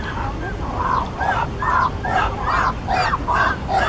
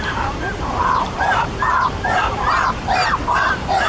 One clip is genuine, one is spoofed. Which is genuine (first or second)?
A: first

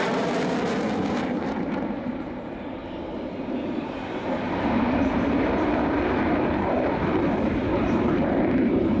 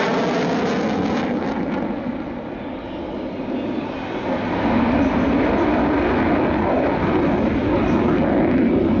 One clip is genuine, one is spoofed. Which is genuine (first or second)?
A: second